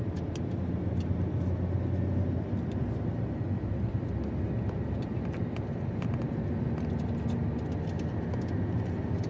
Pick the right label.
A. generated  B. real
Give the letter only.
B